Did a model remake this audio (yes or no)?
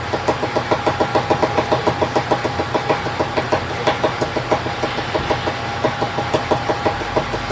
no